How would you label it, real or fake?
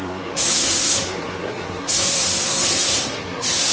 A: fake